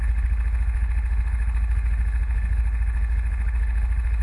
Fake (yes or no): yes